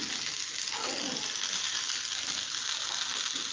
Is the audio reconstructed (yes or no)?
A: no